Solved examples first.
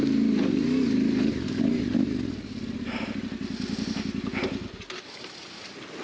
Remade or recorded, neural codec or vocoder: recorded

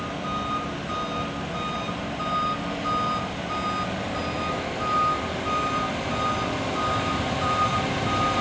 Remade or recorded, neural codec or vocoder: recorded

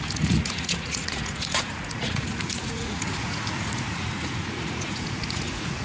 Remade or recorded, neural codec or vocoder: remade, vocoder, Vocos